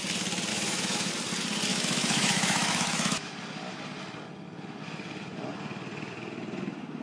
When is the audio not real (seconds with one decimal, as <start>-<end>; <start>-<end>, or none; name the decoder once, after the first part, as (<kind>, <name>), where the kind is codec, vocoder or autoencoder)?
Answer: 0.5-1.1 (autoencoder, DAC-VAE); 1.7-3.3